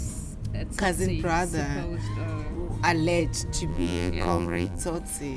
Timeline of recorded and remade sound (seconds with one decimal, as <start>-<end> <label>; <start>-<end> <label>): 0.0-3.7 recorded; 3.7-4.8 remade; 4.8-5.4 recorded